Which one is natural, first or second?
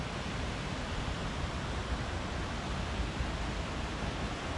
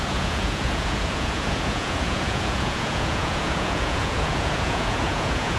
first